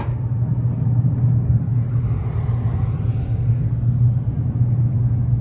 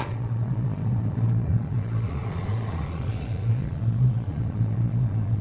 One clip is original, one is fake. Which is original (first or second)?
first